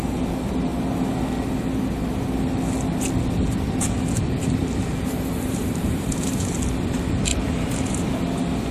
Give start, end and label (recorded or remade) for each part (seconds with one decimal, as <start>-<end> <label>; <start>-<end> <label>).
0.0-4.6 recorded; 4.6-6.5 remade; 6.5-7.3 recorded; 7.3-8.1 remade; 8.1-8.7 recorded